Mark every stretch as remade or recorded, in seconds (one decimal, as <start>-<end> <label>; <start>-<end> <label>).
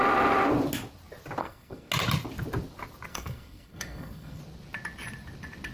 0.0-1.4 recorded; 1.4-1.9 remade; 1.9-3.1 recorded; 3.1-4.4 remade; 4.4-5.7 recorded